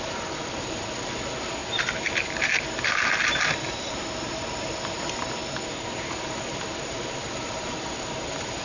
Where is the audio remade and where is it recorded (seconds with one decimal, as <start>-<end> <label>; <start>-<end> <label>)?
0.0-1.6 remade; 1.6-4.6 recorded; 4.6-5.4 remade; 5.4-6.1 recorded; 6.1-8.6 remade